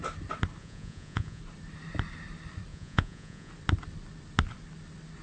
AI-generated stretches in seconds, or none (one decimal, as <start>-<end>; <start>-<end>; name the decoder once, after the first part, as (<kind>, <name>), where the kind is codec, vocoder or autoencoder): 0.6-1.4 (vocoder, Vocos); 2.7-3.5